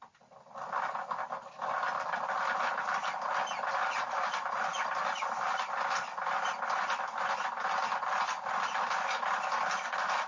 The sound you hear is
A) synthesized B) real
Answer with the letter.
B